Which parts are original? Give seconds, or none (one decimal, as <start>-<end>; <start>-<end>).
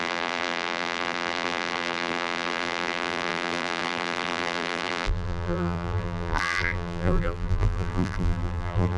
none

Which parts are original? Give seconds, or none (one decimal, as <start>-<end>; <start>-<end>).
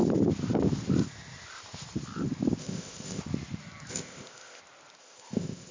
0.0-2.6; 3.2-3.9; 4.6-5.0